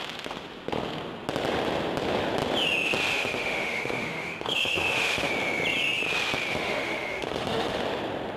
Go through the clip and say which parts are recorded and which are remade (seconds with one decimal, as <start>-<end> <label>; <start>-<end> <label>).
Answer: 0.0-3.1 recorded; 3.1-5.3 remade; 5.3-6.5 recorded; 6.5-7.8 remade; 7.8-8.4 recorded